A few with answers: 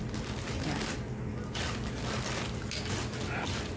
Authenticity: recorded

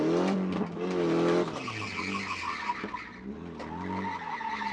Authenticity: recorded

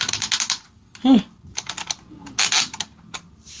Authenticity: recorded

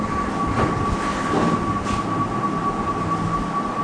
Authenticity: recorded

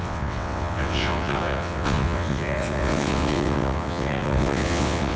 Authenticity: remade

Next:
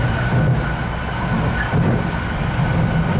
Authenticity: recorded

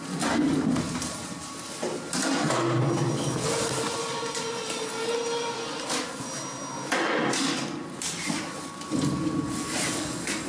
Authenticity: recorded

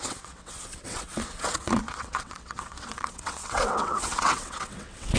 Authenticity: remade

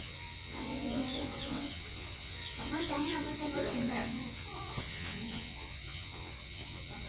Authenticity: remade